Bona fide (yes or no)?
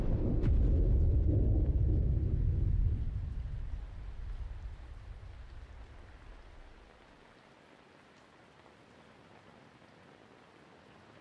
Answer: yes